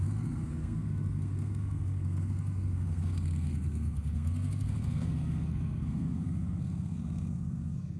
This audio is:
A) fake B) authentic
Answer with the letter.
A